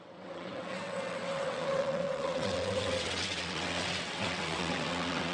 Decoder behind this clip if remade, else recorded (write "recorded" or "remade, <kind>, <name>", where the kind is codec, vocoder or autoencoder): remade, vocoder, WaveNeXt